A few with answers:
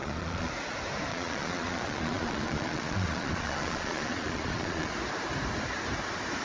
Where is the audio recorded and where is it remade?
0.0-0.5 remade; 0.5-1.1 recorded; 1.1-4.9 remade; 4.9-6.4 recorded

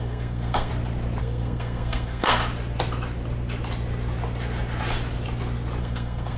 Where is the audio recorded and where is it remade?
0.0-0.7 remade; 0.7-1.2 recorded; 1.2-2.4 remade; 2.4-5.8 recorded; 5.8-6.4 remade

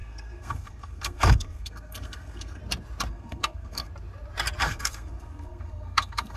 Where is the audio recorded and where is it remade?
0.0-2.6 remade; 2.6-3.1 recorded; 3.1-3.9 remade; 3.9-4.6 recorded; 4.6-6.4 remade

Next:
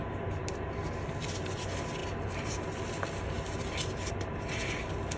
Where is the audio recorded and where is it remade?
0.0-5.2 recorded

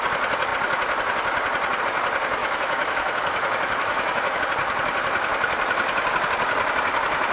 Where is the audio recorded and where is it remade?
0.0-2.4 recorded; 2.4-4.4 remade; 4.4-7.3 recorded

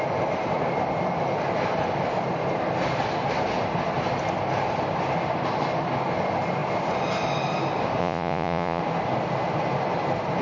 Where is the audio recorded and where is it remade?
0.0-8.0 recorded; 8.0-8.8 remade; 8.8-10.4 recorded

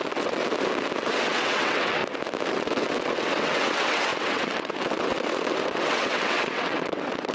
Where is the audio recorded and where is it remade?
0.0-0.4 remade; 0.4-1.0 recorded; 1.0-2.0 remade; 2.0-2.5 recorded; 2.5-7.3 remade

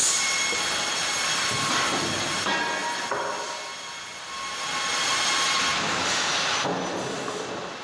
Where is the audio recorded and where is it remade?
0.0-7.8 recorded